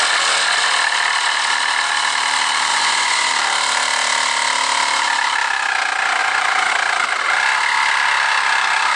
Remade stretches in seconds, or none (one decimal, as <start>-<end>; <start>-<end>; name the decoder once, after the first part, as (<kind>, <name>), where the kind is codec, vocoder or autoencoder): 2.7-3.3 (vocoder, Vocos); 6.2-6.7